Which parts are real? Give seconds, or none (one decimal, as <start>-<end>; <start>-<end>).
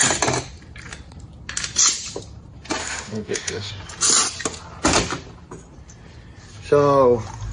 0.0-2.8; 3.7-7.5